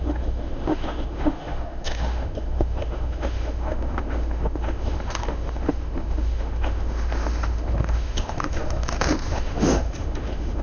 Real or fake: fake